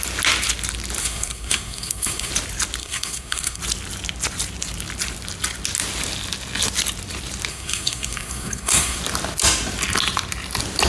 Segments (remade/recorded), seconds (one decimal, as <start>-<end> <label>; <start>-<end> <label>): 0.0-1.0 recorded; 1.0-2.3 remade; 2.3-2.8 recorded; 2.8-3.6 remade; 3.6-7.5 recorded; 7.5-9.0 remade; 9.0-10.9 recorded